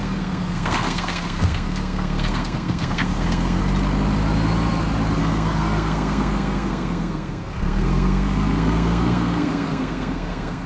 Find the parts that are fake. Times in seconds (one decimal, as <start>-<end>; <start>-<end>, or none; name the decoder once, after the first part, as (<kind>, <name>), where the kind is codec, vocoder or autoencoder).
0.0-3.6 (codec, SNAC); 5.2-10.7